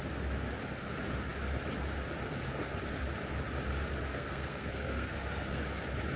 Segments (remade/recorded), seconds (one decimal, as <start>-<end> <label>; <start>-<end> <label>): 0.0-4.1 recorded; 4.1-5.6 remade; 5.6-6.2 recorded

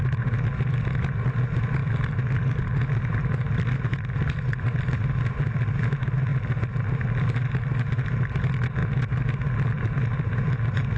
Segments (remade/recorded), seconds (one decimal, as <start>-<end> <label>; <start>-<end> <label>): 0.0-11.0 recorded

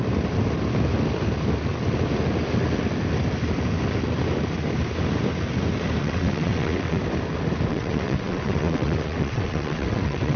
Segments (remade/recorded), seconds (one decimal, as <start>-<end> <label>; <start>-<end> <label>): 0.0-6.0 recorded; 6.0-7.0 remade; 7.0-7.7 recorded; 7.7-10.4 remade

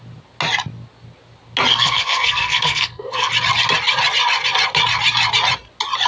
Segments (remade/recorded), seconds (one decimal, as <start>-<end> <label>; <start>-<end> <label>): 0.0-1.7 recorded; 1.7-3.3 remade; 3.3-6.1 recorded

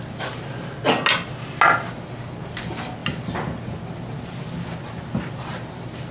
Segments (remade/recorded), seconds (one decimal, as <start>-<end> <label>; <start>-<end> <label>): 0.0-6.1 recorded